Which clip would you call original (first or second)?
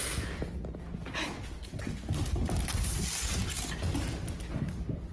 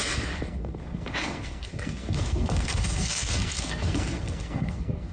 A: first